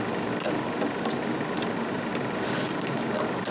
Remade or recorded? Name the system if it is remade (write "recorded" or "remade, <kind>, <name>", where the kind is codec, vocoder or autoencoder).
recorded